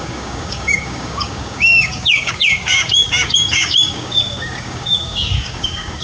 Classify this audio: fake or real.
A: fake